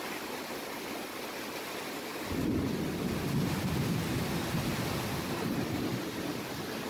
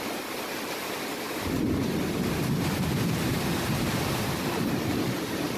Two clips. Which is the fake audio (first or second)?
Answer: second